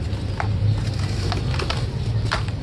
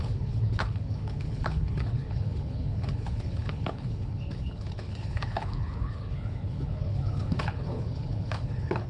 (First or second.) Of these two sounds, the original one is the first